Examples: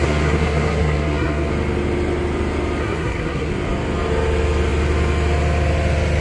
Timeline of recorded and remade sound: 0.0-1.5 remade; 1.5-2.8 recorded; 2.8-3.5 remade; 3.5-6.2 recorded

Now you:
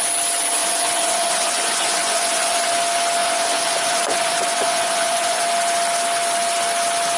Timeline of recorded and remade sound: 0.0-0.6 recorded; 0.6-2.7 remade; 2.7-3.2 recorded; 3.2-5.4 remade; 5.4-7.2 recorded

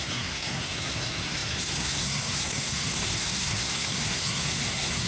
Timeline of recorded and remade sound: 0.0-5.1 remade

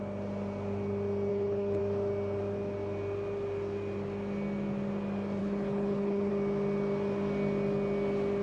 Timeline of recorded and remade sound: 0.0-1.3 recorded; 1.3-1.8 remade; 1.8-5.4 recorded; 5.4-6.3 remade; 6.3-8.4 recorded

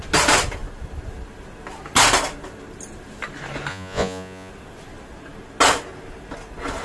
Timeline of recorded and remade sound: 0.0-3.7 recorded; 3.7-4.5 remade; 4.5-6.8 recorded

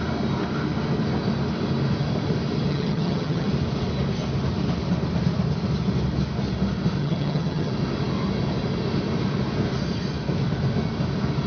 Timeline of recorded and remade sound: 0.0-2.7 recorded; 2.7-3.5 remade; 3.5-7.0 recorded; 7.0-7.7 remade; 7.7-11.5 recorded